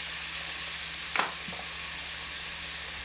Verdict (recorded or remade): recorded